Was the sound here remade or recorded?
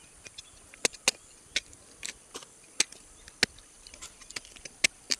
recorded